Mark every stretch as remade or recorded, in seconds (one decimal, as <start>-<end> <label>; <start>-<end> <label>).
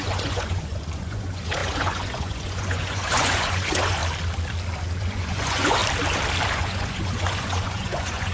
0.0-4.0 remade; 4.0-5.0 recorded; 5.0-5.8 remade; 5.8-6.5 recorded; 6.5-8.3 remade